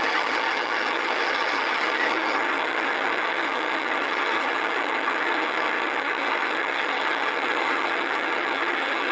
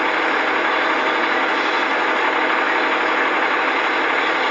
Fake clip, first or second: first